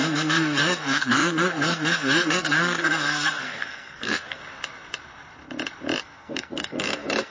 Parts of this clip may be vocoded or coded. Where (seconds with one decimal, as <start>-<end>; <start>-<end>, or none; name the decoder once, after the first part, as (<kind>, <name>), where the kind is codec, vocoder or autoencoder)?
0.0-4.4 (codec, SNAC); 6.0-7.3